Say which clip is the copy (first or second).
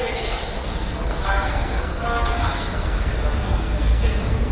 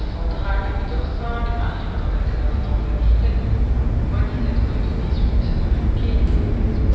first